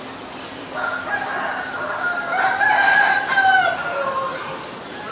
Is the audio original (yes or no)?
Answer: yes